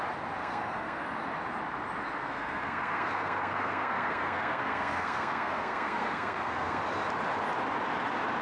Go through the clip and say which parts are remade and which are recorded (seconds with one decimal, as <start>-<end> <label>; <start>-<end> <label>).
0.0-0.4 recorded; 0.4-1.0 remade; 1.0-2.2 recorded; 2.2-6.8 remade; 6.8-8.4 recorded